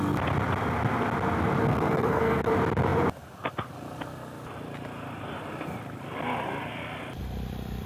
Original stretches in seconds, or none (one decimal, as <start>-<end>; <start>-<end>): 0.0-1.6; 2.5-7.9